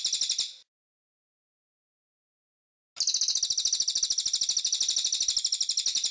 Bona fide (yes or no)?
yes